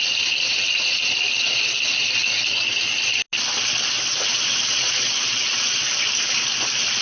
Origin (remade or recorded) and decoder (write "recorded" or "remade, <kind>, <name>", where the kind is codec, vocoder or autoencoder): recorded